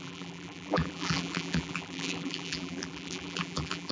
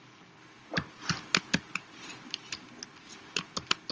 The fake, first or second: first